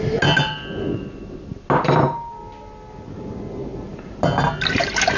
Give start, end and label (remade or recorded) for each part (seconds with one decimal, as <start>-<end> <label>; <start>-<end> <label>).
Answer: 0.0-5.2 recorded